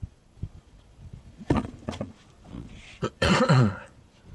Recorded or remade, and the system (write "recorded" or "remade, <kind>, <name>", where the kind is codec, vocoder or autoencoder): remade, vocoder, Vocos